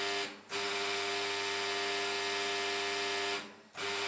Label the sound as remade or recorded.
recorded